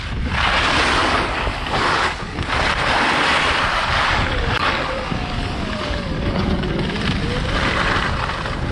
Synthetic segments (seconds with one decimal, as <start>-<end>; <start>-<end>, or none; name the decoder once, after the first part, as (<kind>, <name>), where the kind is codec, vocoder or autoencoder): 1.0-2.7 (codec, DAC); 3.7-6.9